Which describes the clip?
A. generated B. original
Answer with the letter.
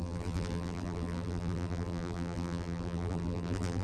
A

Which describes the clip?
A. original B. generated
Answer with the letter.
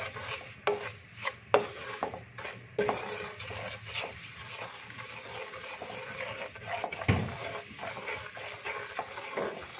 A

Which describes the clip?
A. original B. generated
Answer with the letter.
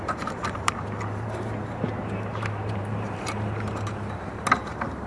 B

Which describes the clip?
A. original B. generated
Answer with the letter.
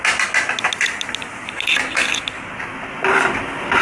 A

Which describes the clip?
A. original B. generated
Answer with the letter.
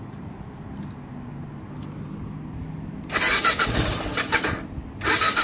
A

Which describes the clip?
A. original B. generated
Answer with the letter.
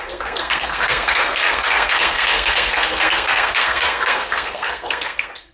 B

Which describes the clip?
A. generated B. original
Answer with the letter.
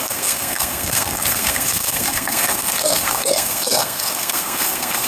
A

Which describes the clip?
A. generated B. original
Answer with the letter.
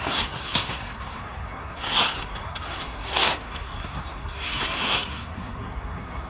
A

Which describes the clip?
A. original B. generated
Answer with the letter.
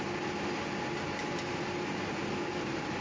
A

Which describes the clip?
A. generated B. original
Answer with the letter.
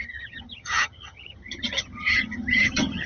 A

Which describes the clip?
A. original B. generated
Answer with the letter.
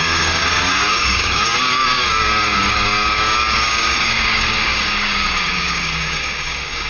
B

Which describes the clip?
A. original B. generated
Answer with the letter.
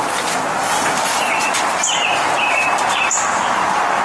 B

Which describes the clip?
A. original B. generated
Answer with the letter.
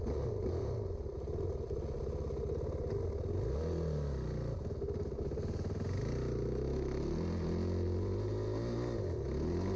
A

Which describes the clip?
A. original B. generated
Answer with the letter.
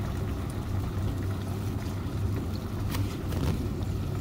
A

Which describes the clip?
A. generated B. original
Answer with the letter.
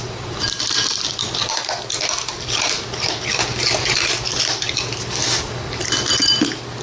A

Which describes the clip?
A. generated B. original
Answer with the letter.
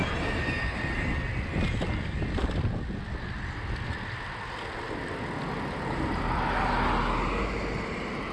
B